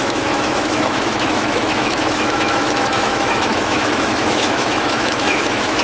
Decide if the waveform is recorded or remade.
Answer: remade